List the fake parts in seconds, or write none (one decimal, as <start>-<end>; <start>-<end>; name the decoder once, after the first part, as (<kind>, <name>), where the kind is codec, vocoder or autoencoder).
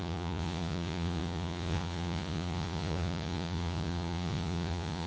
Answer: 0.0-5.1 (vocoder, Vocos)